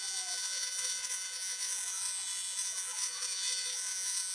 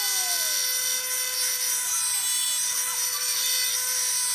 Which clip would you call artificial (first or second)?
first